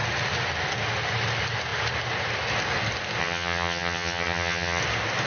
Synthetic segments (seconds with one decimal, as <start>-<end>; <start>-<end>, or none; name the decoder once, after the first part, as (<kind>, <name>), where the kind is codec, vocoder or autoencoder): 3.2-4.8 (vocoder, HiFi-GAN)